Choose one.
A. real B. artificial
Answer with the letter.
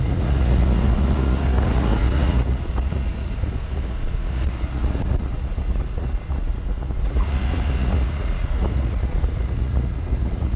B